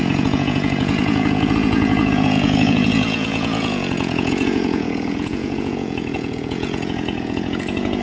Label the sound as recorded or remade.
remade